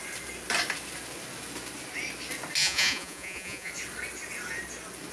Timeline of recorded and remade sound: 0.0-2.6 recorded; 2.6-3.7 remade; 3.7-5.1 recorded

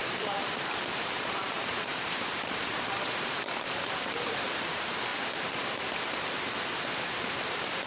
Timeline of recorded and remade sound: 0.0-5.1 remade; 5.1-7.9 recorded

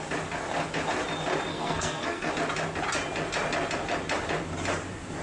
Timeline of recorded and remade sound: 0.0-1.5 recorded; 1.5-2.3 remade; 2.3-5.2 recorded

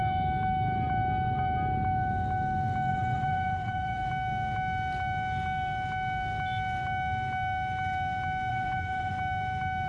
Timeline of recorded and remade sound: 0.0-2.9 recorded; 2.9-4.1 remade; 4.1-8.5 recorded; 8.5-9.2 remade; 9.2-9.9 recorded